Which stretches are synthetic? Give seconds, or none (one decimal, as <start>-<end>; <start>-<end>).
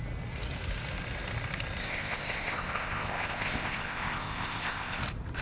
1.8-5.0